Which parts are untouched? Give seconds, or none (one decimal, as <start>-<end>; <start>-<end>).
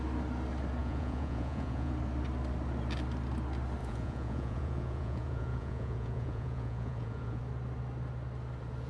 0.0-0.8; 1.9-3.8; 7.4-8.9